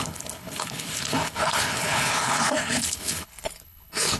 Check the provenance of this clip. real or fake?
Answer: fake